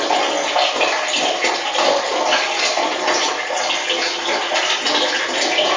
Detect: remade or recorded recorded